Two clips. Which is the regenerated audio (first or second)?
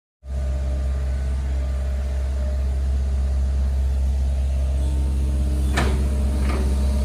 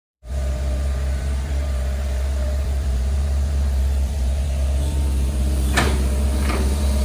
second